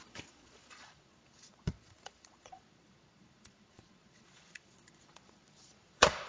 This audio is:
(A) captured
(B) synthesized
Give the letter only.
B